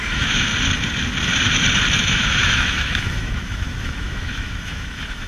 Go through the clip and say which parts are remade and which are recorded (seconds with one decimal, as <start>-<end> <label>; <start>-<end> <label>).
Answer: 0.0-0.5 remade; 0.5-2.0 recorded; 2.0-5.3 remade